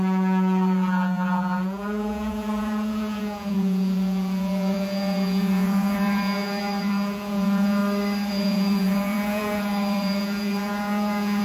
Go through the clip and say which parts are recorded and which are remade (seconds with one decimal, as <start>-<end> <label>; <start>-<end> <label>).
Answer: 0.0-7.8 remade; 7.8-8.3 recorded; 8.3-11.4 remade